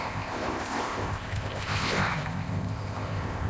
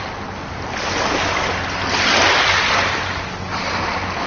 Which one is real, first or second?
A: second